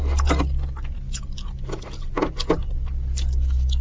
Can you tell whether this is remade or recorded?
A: recorded